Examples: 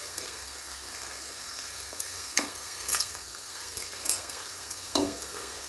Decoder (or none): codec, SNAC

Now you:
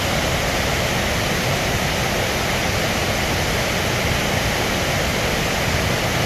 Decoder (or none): none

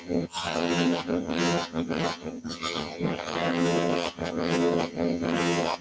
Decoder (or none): vocoder, HiFi-GAN